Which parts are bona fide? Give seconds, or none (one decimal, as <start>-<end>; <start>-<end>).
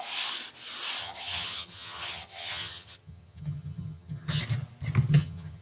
0.0-1.0; 4.4-5.1